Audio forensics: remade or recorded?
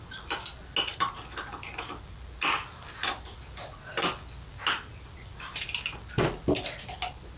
recorded